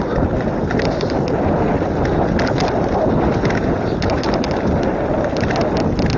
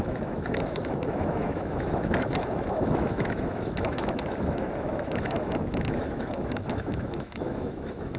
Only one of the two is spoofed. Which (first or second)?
second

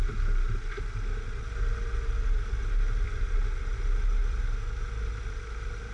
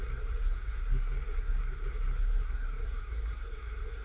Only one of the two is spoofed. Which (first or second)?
second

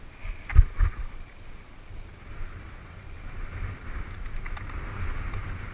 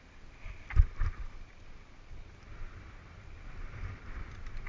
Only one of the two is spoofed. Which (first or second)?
second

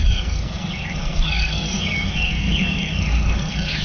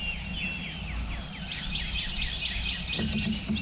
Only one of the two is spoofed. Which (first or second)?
first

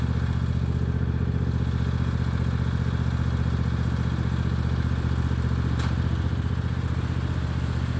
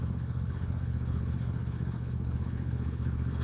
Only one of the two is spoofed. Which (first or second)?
second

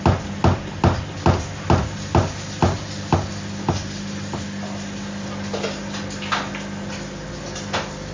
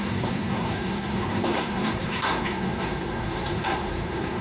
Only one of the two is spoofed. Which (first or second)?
second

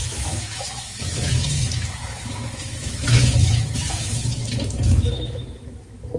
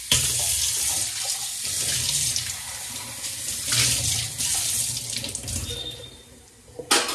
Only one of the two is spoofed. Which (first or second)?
first